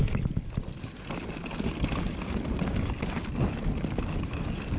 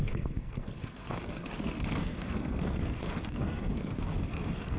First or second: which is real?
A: first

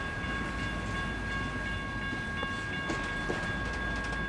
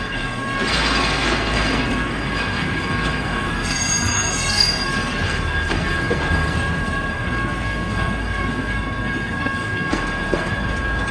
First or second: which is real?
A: first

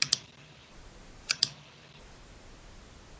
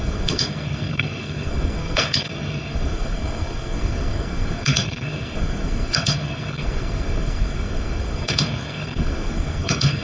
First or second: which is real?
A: first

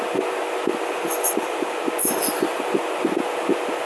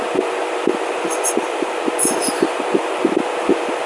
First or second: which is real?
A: first